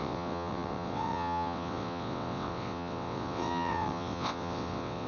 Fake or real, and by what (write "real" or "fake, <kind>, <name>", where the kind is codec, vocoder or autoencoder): fake, vocoder, WaveNeXt